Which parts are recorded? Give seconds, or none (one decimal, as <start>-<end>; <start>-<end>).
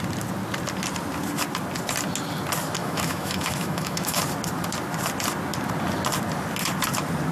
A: 0.0-2.8; 4.2-7.3